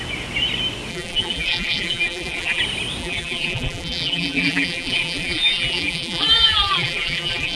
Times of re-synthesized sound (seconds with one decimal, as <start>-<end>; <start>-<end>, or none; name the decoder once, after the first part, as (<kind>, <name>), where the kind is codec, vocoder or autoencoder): 0.9-2.6 (vocoder, BigVGAN v2); 3.0-7.6